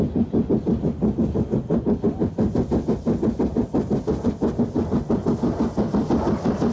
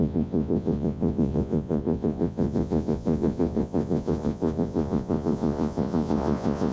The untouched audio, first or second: first